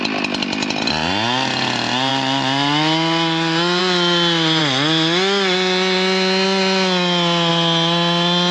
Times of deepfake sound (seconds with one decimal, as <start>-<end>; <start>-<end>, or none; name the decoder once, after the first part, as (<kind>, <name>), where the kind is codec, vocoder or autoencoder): none